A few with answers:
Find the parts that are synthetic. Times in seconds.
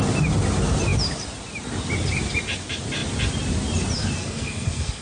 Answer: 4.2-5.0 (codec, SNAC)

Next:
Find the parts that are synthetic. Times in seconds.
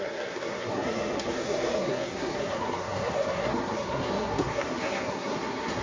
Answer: 0.0-5.8 (codec, SNAC)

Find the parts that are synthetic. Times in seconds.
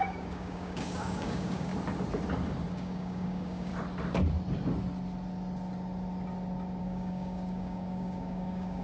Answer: 0.0-1.7 (codec, DAC); 2.7-3.7; 6.8-8.8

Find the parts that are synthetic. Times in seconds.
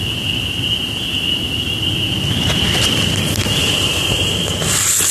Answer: 3.6-4.4 (vocoder, BigVGAN v2)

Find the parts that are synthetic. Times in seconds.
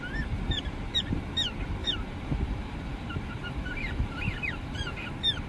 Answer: 1.8-5.1 (vocoder, BigVGAN v2)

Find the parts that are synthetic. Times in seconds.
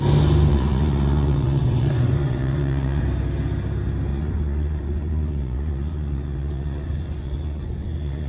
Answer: 0.5-3.0 (vocoder, Vocos); 4.1-8.3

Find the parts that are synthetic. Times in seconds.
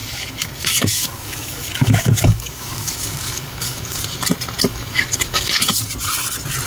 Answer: 0.0-4.0 (codec, DAC); 4.7-5.6